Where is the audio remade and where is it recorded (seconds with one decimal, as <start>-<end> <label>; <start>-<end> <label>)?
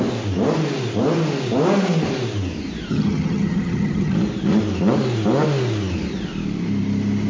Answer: 0.0-2.9 recorded; 2.9-4.1 remade; 4.1-7.3 recorded